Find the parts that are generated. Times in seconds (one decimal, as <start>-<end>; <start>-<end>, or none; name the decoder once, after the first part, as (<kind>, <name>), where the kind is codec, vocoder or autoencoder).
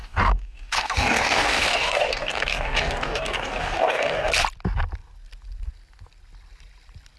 0.0-4.3 (codec, DAC)